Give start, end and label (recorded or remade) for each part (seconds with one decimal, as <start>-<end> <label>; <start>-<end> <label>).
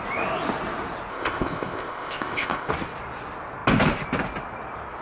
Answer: 0.0-1.1 recorded; 1.1-2.7 remade; 2.7-5.0 recorded